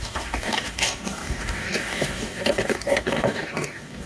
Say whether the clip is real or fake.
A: fake